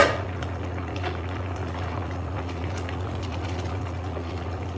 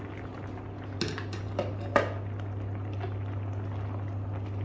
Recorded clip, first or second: second